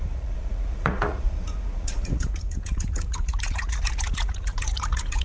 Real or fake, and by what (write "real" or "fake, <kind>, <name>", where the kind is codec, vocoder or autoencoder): fake, vocoder, Vocos